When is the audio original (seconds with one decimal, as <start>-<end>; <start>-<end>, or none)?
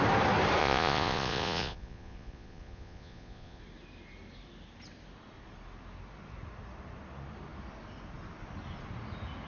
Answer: 0.0-0.6; 3.6-9.5